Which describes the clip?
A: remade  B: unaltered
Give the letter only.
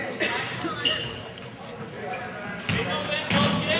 B